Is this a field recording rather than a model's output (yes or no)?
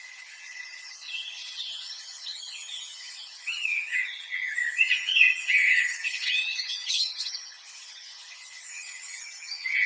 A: no